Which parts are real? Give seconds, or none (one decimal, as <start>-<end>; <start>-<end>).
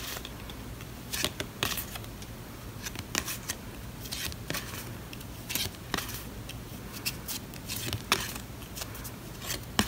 0.0-9.9